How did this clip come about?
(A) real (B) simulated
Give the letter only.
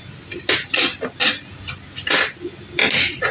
A